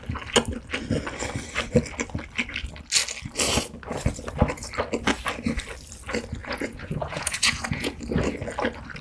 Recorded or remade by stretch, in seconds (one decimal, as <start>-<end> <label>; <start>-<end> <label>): 0.0-6.4 recorded; 6.4-8.0 remade; 8.0-9.0 recorded